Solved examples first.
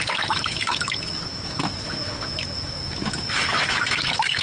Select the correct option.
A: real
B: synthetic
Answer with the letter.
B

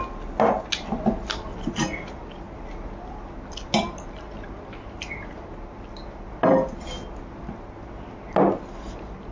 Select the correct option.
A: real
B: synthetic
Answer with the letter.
A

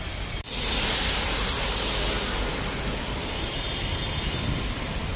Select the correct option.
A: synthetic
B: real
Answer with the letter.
B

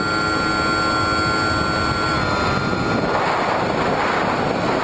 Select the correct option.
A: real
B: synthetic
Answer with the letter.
A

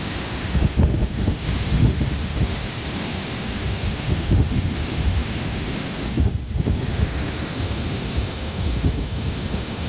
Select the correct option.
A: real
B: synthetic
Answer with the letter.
B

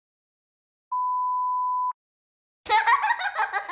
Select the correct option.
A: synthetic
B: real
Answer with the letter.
B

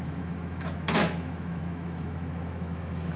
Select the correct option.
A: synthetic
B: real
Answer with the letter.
A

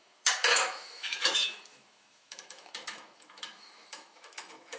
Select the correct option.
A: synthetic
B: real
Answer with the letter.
A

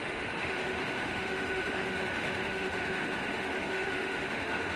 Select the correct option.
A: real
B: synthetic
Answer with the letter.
B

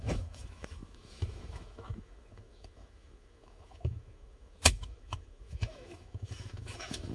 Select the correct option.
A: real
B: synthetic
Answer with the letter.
B